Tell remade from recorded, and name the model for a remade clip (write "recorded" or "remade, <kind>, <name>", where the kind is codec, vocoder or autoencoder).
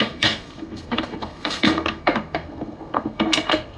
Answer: remade, codec, SNAC